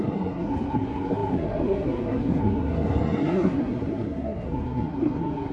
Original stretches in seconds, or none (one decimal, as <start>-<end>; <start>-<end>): none